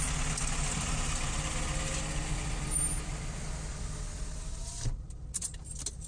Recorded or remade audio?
recorded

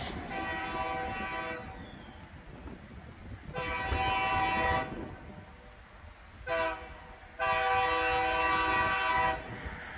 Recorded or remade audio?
recorded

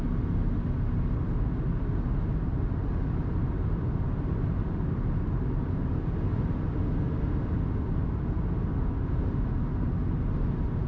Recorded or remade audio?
recorded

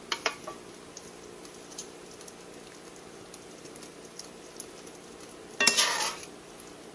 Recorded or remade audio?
recorded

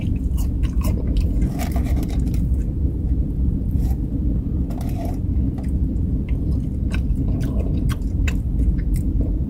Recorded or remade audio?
remade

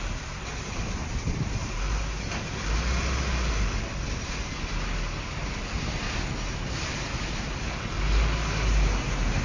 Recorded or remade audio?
recorded